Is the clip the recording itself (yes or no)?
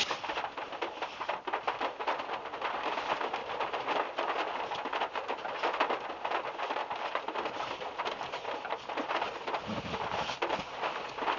yes